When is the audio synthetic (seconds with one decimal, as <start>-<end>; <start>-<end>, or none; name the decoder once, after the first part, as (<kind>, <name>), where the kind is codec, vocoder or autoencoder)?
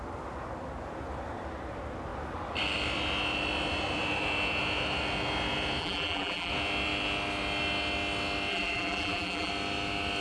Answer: 5.8-6.5 (vocoder, BigVGAN v2); 8.5-9.5